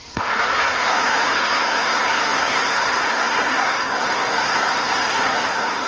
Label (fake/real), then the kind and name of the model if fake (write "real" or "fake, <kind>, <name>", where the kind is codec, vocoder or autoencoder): fake, codec, SNAC